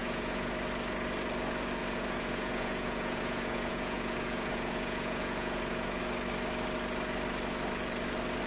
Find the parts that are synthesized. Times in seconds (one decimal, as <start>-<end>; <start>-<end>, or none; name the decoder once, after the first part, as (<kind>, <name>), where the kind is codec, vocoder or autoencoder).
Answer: 0.0-0.5 (vocoder, Vocos); 1.8-6.0